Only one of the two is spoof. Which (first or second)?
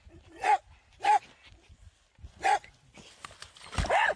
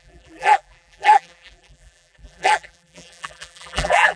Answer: second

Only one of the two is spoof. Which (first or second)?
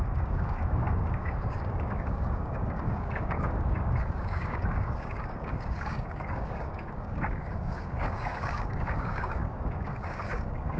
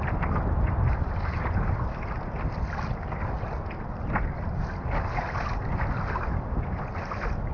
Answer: first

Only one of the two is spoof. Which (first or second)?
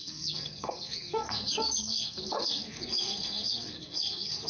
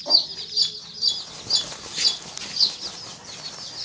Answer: first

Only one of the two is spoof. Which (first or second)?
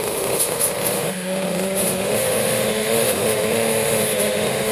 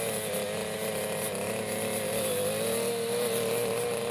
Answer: first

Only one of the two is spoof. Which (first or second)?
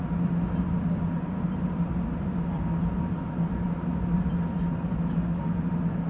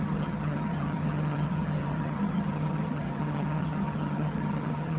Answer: second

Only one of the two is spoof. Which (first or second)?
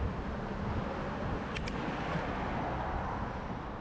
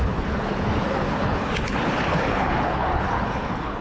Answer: second